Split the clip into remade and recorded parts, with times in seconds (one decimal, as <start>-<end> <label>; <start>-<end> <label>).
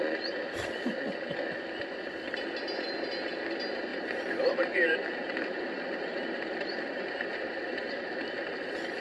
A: 0.0-3.9 recorded; 3.9-7.9 remade; 7.9-9.0 recorded